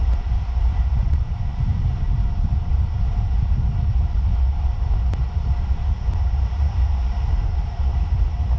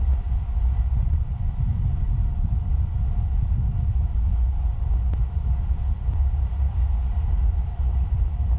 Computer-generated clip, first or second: first